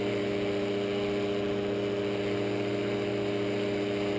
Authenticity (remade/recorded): recorded